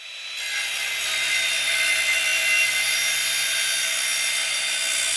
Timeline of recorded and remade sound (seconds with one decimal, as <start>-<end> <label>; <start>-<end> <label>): 0.0-5.2 recorded